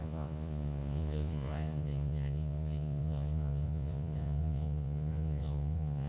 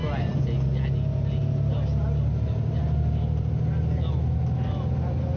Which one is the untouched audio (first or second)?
second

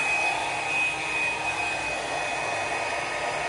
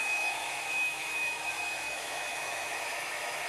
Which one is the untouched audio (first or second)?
first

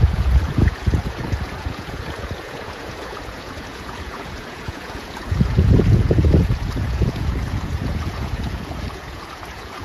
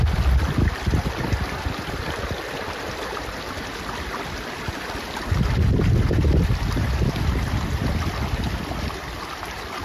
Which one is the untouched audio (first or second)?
second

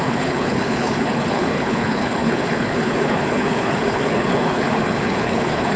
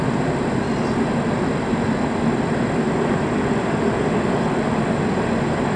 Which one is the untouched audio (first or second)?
second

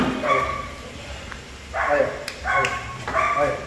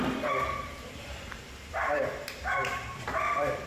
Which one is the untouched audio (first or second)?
first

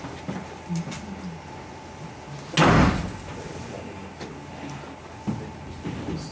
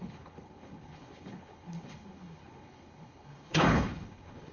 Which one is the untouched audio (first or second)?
first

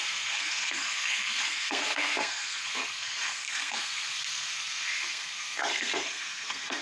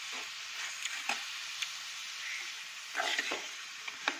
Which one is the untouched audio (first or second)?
second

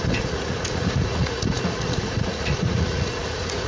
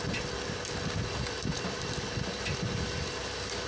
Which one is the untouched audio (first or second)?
second